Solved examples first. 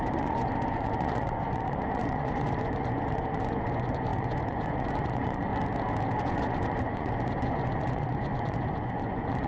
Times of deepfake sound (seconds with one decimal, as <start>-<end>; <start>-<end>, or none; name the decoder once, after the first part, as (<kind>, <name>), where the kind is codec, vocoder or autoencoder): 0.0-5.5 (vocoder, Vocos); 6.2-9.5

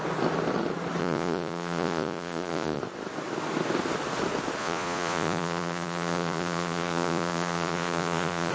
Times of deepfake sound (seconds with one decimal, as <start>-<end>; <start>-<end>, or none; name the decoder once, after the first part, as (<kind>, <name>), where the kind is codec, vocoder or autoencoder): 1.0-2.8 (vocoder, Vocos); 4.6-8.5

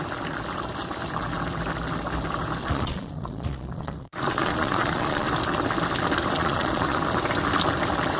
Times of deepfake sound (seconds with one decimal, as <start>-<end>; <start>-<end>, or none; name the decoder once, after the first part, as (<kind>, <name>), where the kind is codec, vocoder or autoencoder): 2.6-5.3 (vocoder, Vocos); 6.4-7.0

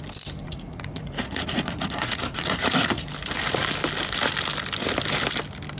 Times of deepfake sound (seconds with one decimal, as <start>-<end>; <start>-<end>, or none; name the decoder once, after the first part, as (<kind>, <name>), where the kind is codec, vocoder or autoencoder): 0.4-3.1 (vocoder, Vocos)